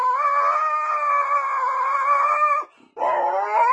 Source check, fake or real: real